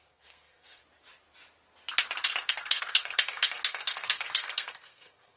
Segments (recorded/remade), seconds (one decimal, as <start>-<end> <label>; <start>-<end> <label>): 0.0-0.8 remade; 0.8-2.5 recorded; 2.5-5.4 remade